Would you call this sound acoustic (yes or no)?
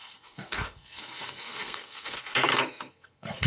no